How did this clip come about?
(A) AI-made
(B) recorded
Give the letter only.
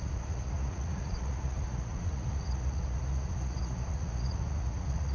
A